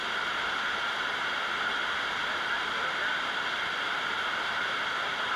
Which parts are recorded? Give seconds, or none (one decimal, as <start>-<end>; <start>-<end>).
0.0-5.4